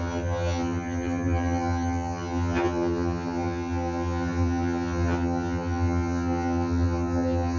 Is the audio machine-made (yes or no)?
yes